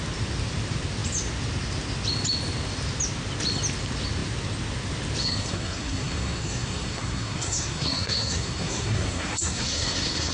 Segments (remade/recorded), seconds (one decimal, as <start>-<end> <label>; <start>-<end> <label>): 0.0-5.2 recorded; 5.2-10.3 remade